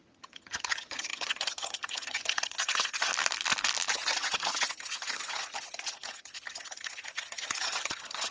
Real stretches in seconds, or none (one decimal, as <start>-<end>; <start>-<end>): 3.1-3.9